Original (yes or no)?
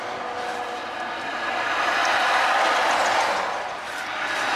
yes